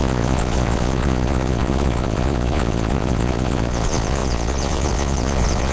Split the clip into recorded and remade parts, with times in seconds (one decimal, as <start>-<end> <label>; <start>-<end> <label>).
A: 0.0-5.7 remade